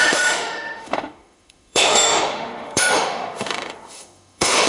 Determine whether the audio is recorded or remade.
remade